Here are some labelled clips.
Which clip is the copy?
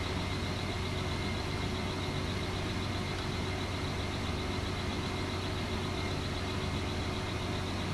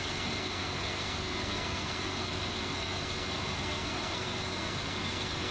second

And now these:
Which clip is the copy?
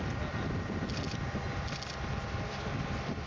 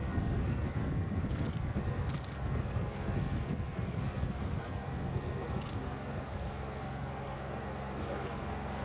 second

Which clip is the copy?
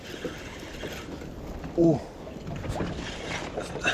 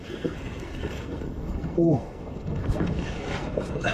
second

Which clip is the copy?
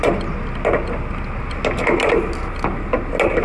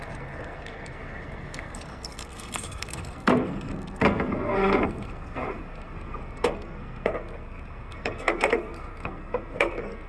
second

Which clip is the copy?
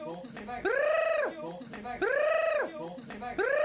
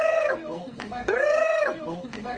second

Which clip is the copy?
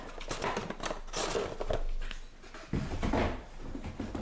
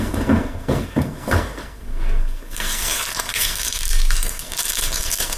second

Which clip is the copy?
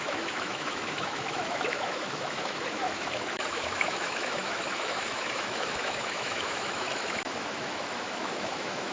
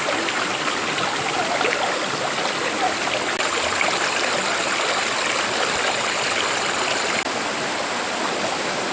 first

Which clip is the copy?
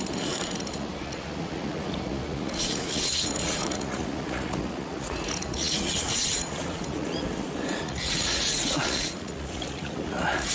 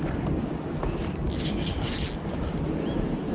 first